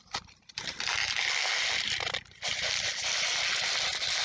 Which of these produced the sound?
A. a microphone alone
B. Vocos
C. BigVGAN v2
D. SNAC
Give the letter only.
A